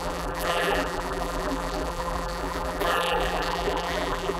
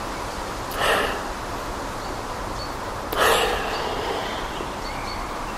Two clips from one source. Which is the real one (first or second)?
second